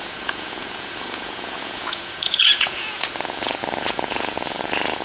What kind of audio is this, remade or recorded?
remade